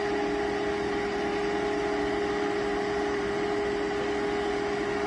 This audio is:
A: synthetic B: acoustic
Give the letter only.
B